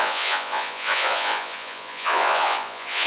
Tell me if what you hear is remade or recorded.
remade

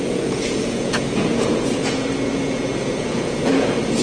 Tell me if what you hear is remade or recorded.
remade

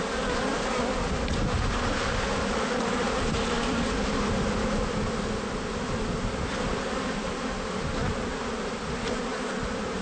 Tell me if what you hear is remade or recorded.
recorded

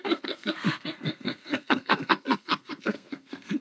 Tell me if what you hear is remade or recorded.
remade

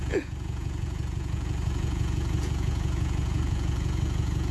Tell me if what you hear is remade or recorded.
remade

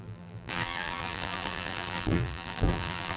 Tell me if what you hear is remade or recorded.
remade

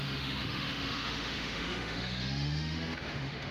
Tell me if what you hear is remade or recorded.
remade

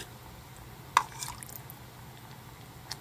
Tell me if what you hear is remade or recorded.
recorded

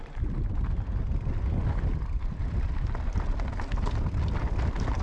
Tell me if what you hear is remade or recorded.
recorded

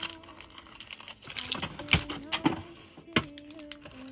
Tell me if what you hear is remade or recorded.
recorded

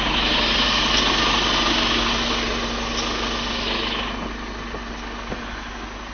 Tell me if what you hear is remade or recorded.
recorded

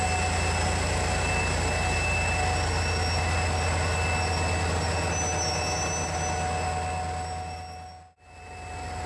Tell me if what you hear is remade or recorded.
recorded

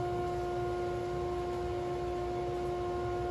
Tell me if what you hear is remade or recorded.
recorded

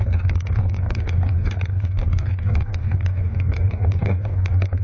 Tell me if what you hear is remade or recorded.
remade